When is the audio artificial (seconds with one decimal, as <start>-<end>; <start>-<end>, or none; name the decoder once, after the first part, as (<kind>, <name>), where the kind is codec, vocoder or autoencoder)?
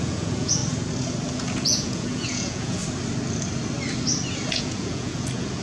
0.0-0.6 (vocoder, Vocos); 1.3-2.8; 4.5-5.6